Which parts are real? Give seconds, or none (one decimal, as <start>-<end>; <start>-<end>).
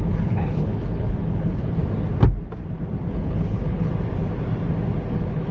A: 1.8-3.1; 3.9-5.1